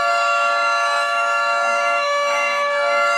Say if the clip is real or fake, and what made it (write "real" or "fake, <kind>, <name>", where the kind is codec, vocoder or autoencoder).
fake, codec, DAC